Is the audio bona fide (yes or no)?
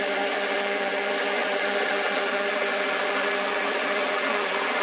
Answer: no